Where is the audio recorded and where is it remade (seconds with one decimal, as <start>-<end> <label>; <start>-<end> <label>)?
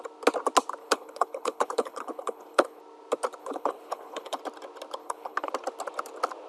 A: 0.0-0.8 recorded; 0.8-2.8 remade; 2.8-3.4 recorded; 3.4-4.4 remade; 4.4-5.0 recorded; 5.0-5.5 remade; 5.5-6.5 recorded